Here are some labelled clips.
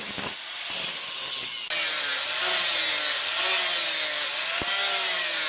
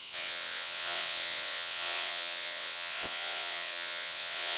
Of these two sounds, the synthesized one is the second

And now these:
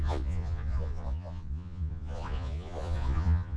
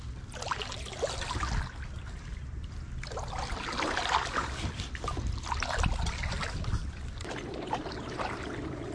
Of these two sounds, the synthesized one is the first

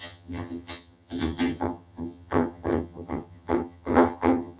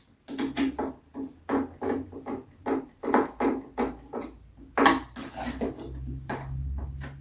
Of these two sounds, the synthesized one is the first